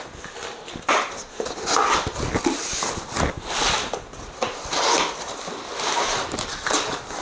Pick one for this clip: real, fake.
real